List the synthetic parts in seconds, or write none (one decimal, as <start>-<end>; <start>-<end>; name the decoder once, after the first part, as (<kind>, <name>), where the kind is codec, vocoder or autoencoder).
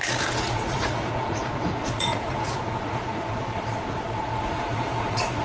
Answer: 0.0-5.4 (vocoder, Vocos)